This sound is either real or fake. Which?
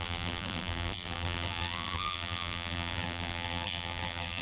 fake